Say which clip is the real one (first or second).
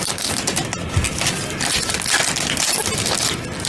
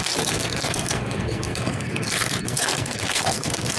first